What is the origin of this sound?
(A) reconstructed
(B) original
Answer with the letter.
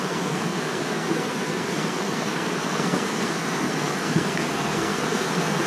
A